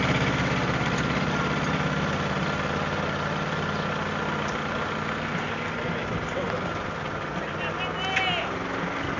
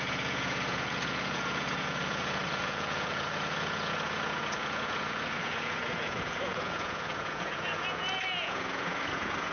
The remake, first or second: second